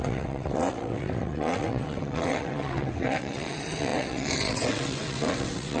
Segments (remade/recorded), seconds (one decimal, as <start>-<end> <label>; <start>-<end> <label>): 0.0-5.8 remade

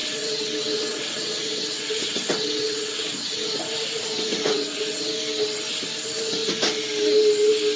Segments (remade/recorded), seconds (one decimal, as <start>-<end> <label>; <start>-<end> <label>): 0.0-3.6 remade; 3.6-4.1 recorded; 4.1-5.1 remade; 5.1-7.8 recorded